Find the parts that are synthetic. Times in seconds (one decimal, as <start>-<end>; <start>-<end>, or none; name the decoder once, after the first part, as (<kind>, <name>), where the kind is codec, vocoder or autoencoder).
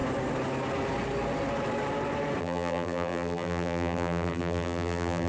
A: 2.4-5.3 (vocoder, BigVGAN v2)